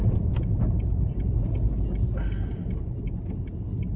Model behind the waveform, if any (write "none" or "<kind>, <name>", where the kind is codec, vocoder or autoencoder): none